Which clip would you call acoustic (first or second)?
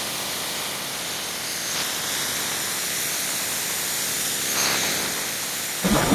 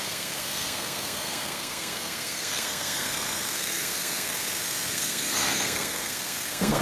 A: first